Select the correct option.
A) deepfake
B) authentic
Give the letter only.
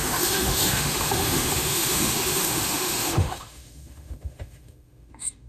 A